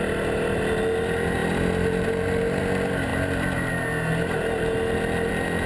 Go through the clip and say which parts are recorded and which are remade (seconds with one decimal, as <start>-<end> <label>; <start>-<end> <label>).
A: 0.0-5.7 recorded